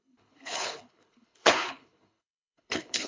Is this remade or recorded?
remade